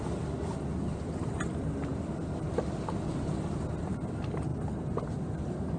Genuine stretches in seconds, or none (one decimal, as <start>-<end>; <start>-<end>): 0.0-5.8